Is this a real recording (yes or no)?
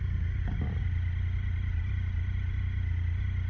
yes